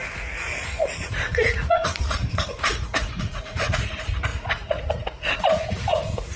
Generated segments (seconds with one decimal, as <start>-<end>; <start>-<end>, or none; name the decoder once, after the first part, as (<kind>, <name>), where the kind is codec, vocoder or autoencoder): 0.0-6.4 (vocoder, Vocos)